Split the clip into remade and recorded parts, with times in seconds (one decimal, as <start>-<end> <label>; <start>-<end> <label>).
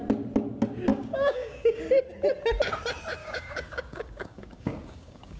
0.0-0.9 recorded; 0.9-1.8 remade; 1.8-3.2 recorded; 3.2-5.4 remade